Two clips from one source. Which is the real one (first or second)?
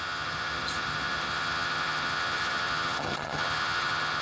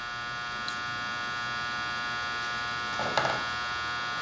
second